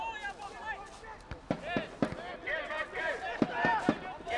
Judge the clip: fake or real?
real